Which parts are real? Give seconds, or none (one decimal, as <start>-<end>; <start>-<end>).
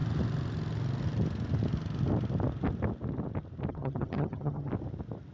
0.0-3.7; 4.7-5.3